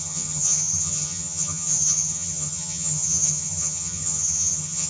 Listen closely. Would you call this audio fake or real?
fake